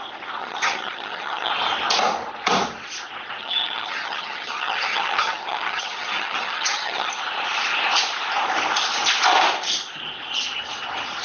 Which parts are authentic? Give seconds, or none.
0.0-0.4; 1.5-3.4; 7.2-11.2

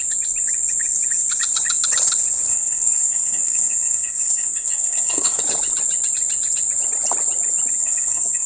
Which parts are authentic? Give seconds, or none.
0.0-2.5; 5.4-7.8

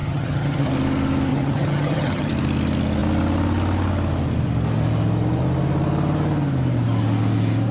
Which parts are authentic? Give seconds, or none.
0.7-1.3; 2.3-7.7

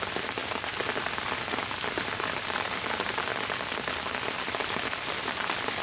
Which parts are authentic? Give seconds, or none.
0.0-5.8